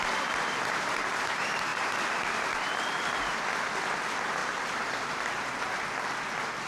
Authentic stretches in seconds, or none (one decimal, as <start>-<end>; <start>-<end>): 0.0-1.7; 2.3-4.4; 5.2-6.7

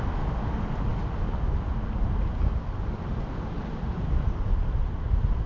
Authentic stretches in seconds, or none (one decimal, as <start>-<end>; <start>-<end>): 0.0-5.5

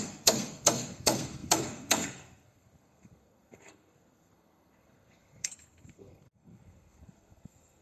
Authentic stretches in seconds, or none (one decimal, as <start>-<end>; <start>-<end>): none

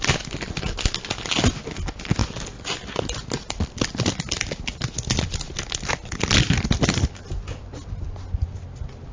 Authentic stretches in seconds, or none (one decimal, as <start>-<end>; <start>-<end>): 0.0-9.1

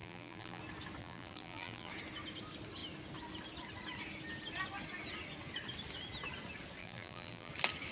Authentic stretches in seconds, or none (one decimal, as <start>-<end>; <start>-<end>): 0.6-1.0; 1.9-6.8; 7.5-7.9

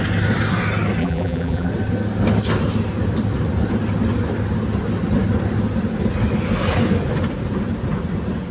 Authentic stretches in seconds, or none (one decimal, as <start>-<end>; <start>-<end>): 0.0-1.0; 1.7-8.5